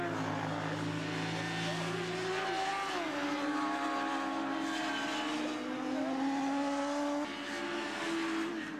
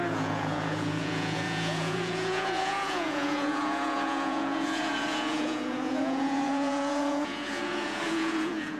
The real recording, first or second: first